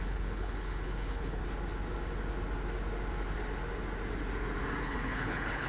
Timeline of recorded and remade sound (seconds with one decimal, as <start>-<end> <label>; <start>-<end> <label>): 0.0-1.4 remade; 1.4-4.8 recorded; 4.8-5.7 remade